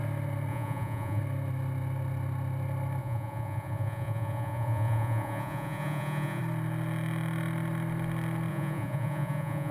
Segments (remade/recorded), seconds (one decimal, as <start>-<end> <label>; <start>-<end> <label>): 0.0-0.5 recorded; 0.5-1.2 remade; 1.2-3.0 recorded; 3.0-6.4 remade; 6.4-8.5 recorded; 8.5-9.7 remade